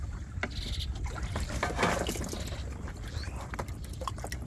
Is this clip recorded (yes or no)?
yes